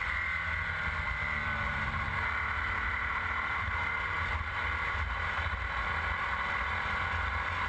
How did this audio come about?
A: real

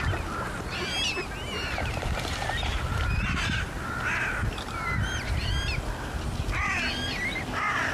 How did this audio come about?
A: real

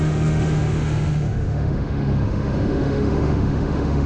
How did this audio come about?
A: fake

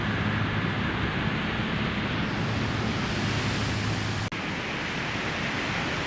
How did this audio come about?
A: real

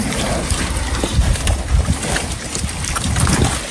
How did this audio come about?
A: real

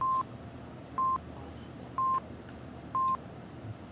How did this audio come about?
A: real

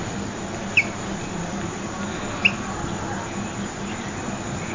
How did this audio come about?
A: real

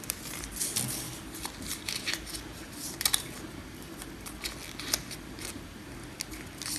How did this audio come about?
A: real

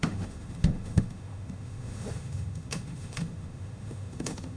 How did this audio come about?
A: fake